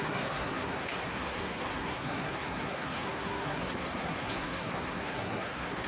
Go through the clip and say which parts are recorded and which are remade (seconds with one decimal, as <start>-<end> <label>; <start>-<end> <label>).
0.0-5.9 remade